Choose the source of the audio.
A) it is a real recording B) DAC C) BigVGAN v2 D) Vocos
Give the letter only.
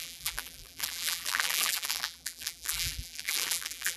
C